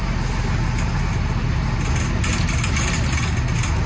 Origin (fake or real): real